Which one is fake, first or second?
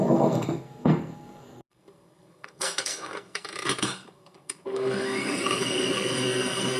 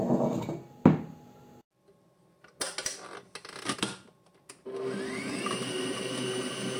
first